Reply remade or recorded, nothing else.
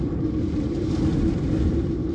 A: recorded